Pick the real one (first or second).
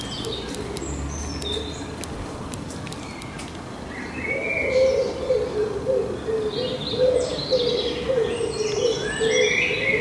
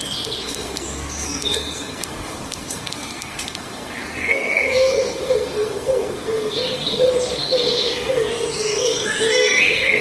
first